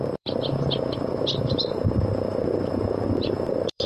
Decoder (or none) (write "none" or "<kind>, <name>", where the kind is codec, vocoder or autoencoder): vocoder, BigVGAN v2